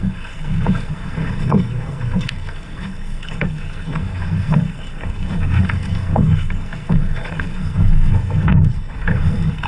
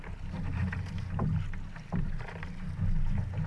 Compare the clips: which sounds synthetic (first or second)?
first